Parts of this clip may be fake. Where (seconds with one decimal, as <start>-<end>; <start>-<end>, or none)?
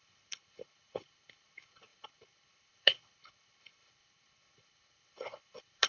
0.0-5.9